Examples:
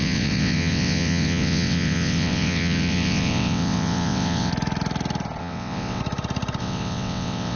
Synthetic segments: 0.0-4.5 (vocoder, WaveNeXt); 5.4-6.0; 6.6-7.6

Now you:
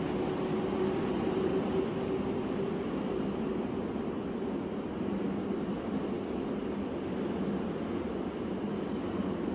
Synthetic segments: none

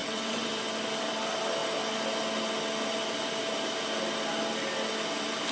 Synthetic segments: 0.0-0.5 (vocoder, WaveNeXt)

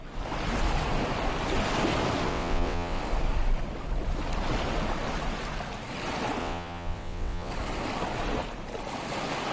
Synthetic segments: 2.3-3.0 (vocoder, WaveNeXt); 6.4-7.5

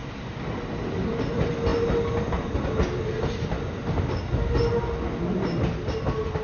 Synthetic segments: none

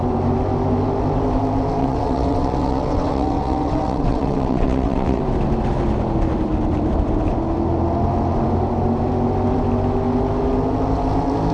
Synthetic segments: 1.8-5.2 (vocoder, WaveNeXt)

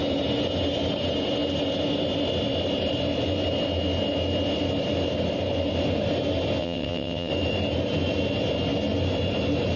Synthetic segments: 6.6-7.3 (vocoder, WaveNeXt)